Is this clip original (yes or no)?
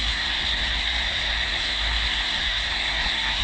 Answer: no